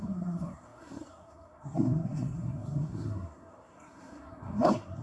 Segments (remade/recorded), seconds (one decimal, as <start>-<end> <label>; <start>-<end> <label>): 0.0-5.0 remade